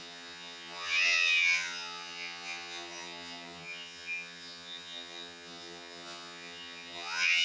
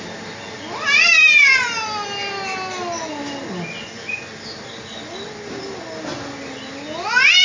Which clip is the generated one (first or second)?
first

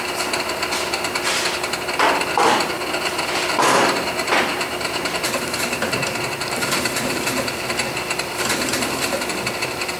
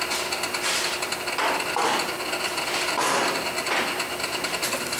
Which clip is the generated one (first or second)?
first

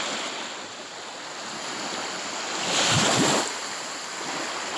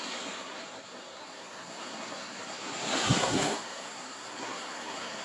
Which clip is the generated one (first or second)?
second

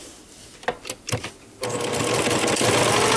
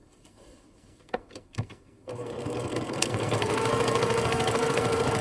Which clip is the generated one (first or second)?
second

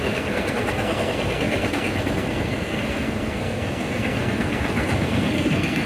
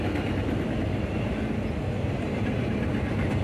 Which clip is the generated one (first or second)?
first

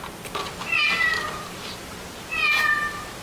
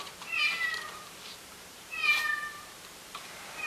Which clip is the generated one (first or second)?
second